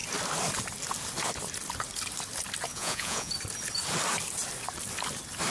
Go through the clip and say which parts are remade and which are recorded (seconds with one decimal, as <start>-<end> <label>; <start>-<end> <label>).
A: 0.0-2.7 recorded; 2.7-3.3 remade; 3.3-5.5 recorded